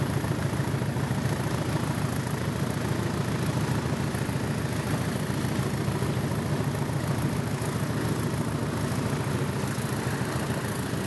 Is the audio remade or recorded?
recorded